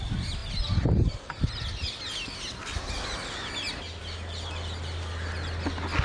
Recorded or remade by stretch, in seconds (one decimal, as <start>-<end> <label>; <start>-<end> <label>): 0.0-6.0 recorded